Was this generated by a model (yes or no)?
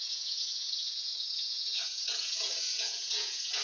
yes